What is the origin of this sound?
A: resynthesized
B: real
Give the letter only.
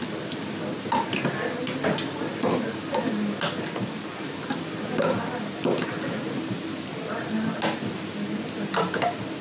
B